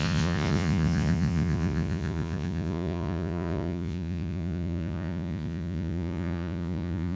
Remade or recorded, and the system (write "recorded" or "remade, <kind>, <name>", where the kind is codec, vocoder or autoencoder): remade, vocoder, Vocos